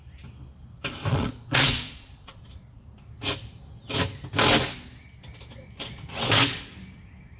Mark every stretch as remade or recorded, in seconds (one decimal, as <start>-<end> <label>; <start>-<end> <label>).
0.0-1.1 recorded; 1.1-2.8 remade; 2.8-7.4 recorded